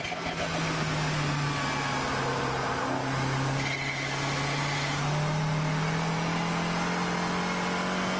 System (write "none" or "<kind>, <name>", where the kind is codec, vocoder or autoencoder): none